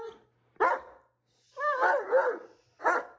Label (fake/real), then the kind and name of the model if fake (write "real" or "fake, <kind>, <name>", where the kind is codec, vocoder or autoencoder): real